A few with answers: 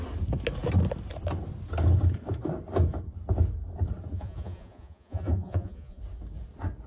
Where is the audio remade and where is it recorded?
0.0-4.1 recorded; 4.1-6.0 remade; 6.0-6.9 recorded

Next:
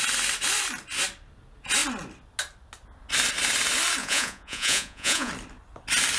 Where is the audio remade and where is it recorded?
0.0-4.0 recorded; 4.0-5.3 remade; 5.3-6.2 recorded

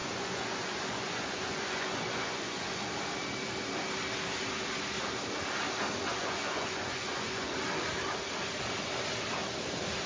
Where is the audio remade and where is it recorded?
0.0-2.8 remade; 2.8-6.1 recorded; 6.1-7.5 remade; 7.5-10.1 recorded

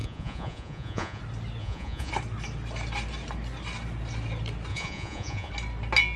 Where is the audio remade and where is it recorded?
0.0-1.2 remade; 1.2-1.6 recorded; 1.6-2.1 remade; 2.1-4.7 recorded; 4.7-5.5 remade; 5.5-6.2 recorded

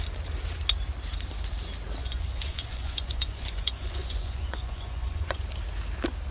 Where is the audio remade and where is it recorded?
0.0-2.0 recorded; 2.0-5.4 remade; 5.4-6.3 recorded

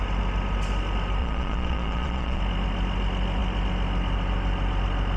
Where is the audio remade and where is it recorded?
0.0-1.2 recorded; 1.2-2.4 remade; 2.4-5.2 recorded

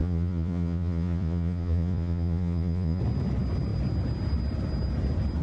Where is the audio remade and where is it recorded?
0.0-3.0 remade; 3.0-5.4 recorded

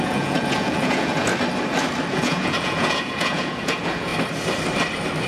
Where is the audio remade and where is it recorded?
0.0-1.3 remade; 1.3-2.1 recorded; 2.1-4.1 remade; 4.1-5.3 recorded